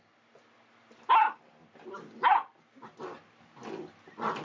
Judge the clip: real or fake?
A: real